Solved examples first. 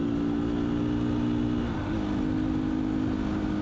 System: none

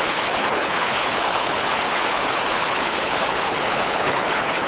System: codec, HILCodec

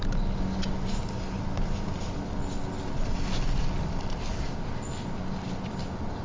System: none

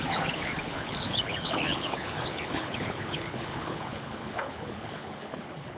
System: codec, HILCodec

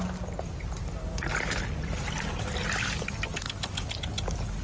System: none